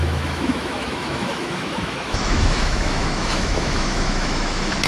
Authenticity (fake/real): fake